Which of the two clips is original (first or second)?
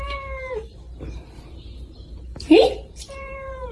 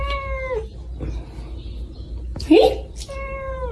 second